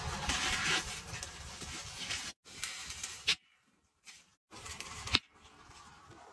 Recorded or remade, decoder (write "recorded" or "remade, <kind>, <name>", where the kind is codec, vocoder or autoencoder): remade, vocoder, BigVGAN v2